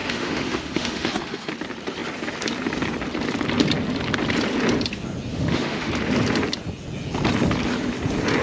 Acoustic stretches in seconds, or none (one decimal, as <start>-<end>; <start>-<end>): 1.5-5.3; 5.9-8.4